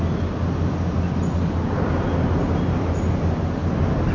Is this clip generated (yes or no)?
no